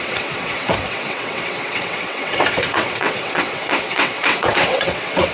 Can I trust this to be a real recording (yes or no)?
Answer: no